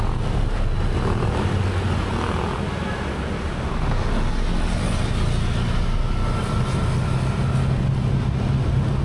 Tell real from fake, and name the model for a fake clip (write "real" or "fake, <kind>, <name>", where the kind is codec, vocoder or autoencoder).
real